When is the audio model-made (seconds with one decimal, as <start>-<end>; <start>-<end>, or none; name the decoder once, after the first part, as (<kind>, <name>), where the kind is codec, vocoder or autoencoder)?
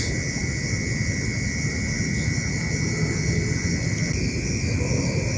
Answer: none